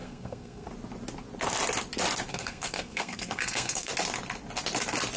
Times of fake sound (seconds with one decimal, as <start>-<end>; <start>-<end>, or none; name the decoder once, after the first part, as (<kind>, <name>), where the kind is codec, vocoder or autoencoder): 0.0-0.7 (codec, SNAC); 2.3-3.9